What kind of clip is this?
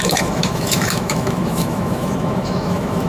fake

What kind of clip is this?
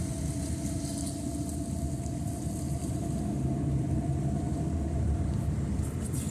real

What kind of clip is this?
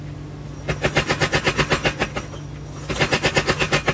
real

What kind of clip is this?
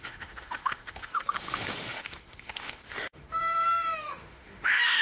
fake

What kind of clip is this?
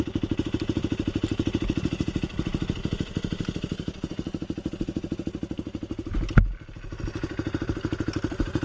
real